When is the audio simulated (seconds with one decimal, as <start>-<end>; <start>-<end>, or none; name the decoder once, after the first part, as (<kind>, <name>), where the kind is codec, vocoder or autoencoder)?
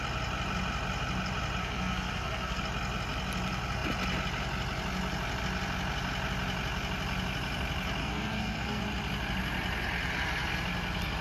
1.6-2.6 (codec, SNAC); 8.0-8.8